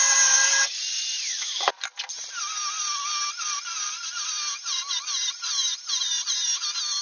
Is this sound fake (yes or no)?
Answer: no